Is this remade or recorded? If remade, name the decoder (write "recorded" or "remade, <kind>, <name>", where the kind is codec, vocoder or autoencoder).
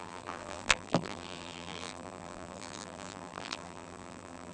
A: remade, vocoder, BigVGAN v2